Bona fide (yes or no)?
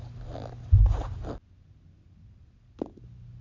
yes